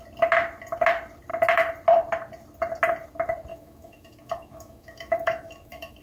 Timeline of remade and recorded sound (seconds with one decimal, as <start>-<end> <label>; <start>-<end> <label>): 0.0-3.5 recorded; 3.5-6.0 remade